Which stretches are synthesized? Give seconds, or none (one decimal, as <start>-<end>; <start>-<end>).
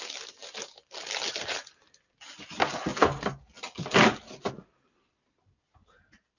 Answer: none